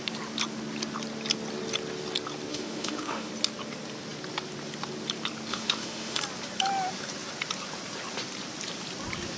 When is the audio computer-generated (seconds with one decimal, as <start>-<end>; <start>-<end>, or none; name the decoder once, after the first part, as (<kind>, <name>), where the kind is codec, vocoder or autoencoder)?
2.5-3.3 (autoencoder, DAC-VAE); 5.5-6.2